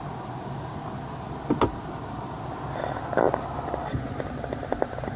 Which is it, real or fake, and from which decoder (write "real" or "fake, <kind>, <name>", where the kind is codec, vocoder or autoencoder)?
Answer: real